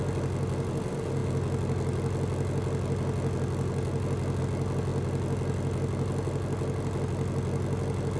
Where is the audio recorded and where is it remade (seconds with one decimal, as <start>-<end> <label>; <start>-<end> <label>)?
0.0-8.2 recorded